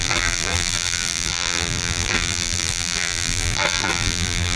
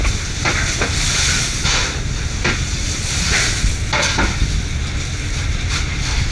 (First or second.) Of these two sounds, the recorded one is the second